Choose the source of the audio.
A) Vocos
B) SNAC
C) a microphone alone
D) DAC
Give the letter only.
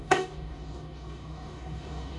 D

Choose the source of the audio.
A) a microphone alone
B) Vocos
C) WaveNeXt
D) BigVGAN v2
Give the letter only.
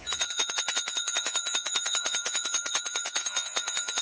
B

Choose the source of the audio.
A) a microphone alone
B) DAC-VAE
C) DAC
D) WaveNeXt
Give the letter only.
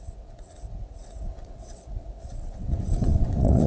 D